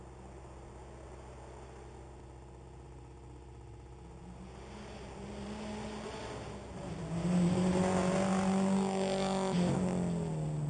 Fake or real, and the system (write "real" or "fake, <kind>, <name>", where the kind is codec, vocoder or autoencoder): real